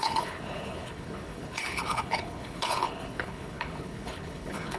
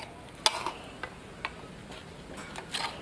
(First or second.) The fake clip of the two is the first